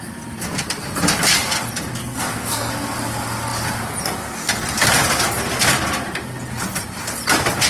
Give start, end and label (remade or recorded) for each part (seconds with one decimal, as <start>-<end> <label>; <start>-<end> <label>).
0.0-2.0 recorded; 2.0-2.7 remade; 2.7-7.7 recorded